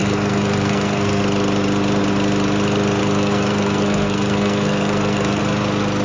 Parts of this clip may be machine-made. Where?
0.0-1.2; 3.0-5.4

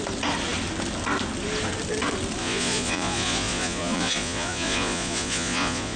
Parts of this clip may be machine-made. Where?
2.4-6.0

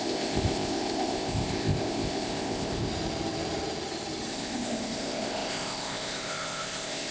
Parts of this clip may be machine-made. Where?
0.0-2.9; 4.3-7.1